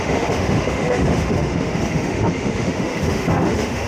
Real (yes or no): no